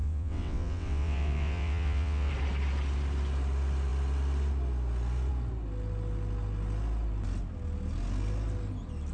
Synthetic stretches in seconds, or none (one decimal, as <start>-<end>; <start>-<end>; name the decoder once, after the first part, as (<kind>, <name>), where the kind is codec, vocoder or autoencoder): 0.0-2.3 (vocoder, WaveNeXt)